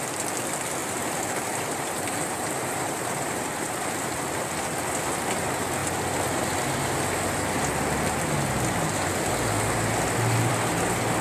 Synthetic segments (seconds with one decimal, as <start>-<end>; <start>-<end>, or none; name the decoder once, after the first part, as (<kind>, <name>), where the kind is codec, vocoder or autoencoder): 0.8-4.1 (vocoder, BigVGAN v2)